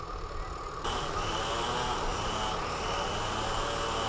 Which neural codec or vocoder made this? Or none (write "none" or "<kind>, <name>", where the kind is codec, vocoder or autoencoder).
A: none